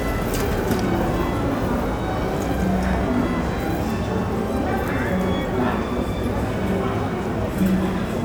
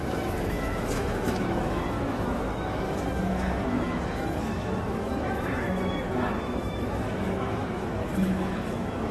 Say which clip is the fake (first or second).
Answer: second